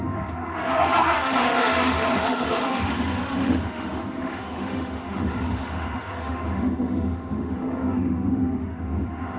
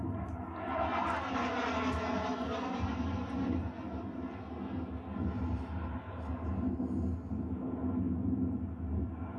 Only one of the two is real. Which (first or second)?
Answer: second